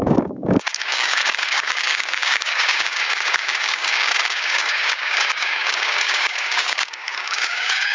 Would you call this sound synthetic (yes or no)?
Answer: yes